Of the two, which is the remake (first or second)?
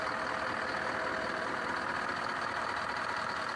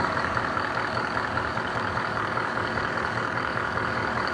second